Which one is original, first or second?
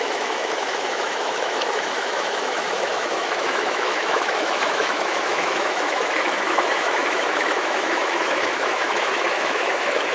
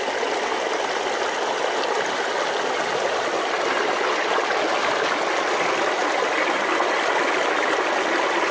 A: second